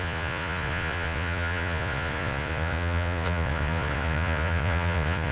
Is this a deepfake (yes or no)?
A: yes